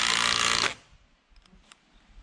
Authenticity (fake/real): real